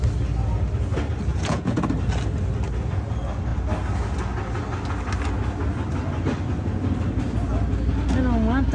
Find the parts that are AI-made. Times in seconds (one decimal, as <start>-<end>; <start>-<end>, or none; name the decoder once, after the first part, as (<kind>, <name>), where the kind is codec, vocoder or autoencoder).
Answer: 1.3-1.8 (vocoder, Vocos)